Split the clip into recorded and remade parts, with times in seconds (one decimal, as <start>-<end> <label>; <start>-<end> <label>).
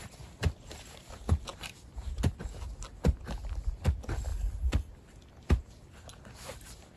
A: 0.0-7.0 recorded